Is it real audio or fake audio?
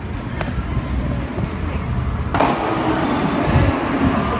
real